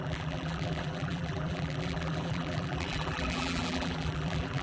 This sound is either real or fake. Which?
fake